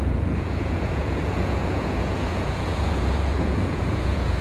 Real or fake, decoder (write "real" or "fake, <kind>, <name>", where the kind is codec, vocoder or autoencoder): fake, vocoder, Vocos